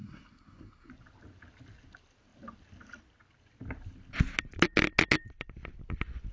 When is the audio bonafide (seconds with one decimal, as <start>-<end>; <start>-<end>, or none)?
0.9-6.3